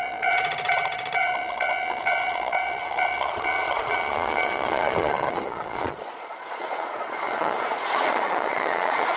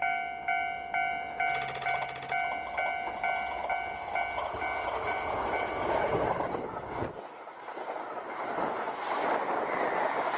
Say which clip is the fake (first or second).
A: first